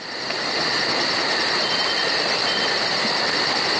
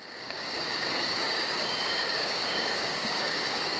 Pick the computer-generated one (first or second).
second